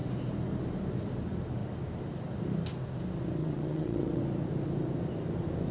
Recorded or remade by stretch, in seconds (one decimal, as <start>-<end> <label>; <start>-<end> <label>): 0.0-3.4 recorded; 3.4-4.2 remade; 4.2-5.7 recorded